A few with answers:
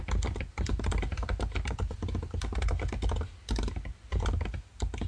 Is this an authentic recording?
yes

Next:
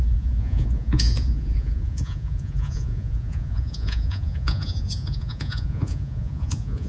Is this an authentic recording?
no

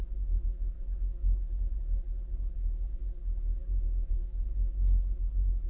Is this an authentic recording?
no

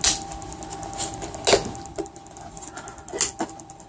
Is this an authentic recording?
yes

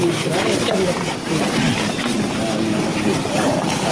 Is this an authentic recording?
yes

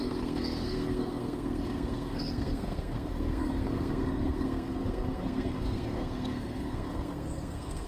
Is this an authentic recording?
no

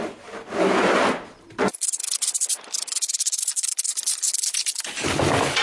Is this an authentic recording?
yes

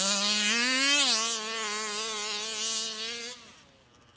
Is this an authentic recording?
yes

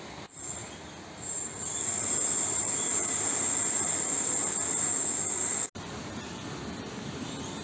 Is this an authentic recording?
yes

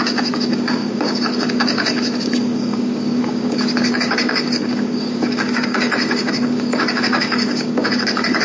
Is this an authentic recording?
no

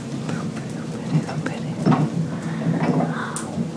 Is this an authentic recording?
yes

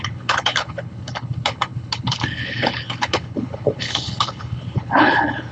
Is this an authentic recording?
no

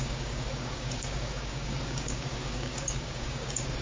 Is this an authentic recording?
no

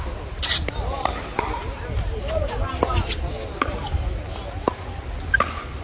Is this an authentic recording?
yes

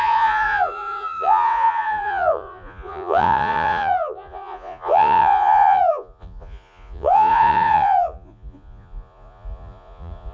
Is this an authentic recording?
no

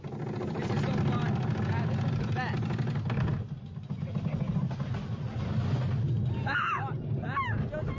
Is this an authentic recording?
yes